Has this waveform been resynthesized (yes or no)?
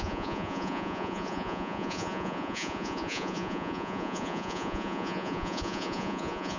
yes